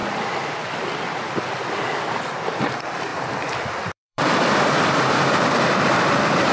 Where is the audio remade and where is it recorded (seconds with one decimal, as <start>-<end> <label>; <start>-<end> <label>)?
0.0-2.2 recorded; 2.2-6.5 remade